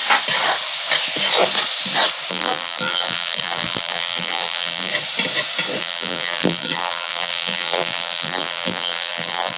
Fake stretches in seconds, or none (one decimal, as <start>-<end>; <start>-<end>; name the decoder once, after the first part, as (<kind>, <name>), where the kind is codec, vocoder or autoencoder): 2.3-4.9 (vocoder, BigVGAN v2); 5.8-9.6